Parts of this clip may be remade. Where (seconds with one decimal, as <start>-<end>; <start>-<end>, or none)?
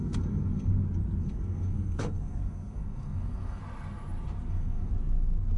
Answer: 0.0-0.7; 1.2-3.6; 4.5-4.9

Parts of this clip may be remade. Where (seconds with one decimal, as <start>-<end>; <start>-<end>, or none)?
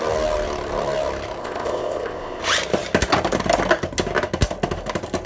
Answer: 1.4-2.4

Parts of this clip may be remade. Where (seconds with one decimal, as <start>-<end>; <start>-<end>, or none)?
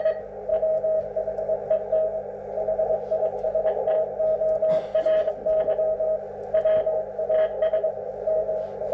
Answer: none